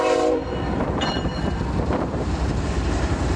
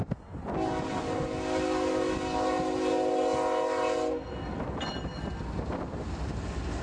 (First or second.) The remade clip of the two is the first